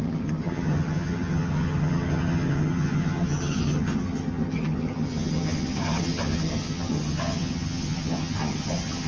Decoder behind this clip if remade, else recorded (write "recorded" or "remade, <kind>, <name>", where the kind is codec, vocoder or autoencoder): remade, vocoder, HiFi-GAN